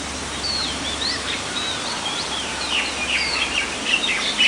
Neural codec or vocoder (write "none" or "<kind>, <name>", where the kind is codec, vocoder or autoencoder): vocoder, BigVGAN v2